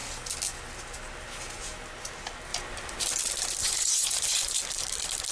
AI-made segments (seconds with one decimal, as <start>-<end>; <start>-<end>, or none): 3.6-4.6